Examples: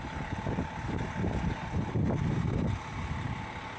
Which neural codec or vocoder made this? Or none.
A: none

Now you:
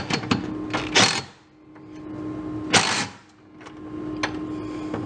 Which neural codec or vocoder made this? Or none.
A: none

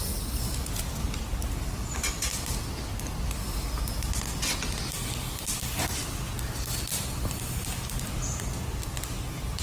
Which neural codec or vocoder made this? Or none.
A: none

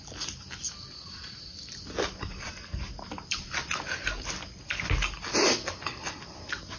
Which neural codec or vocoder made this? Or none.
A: none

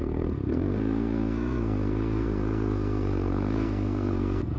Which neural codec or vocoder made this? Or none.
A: codec, SNAC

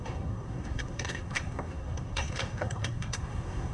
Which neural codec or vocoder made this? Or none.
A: codec, SNAC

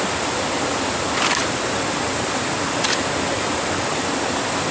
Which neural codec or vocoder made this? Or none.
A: none